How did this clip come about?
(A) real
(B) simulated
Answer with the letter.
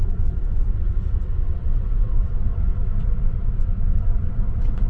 B